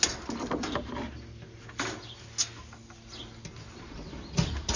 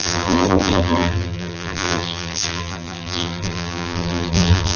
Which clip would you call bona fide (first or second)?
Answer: first